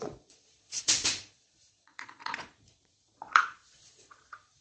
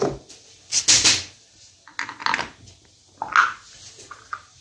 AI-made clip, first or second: first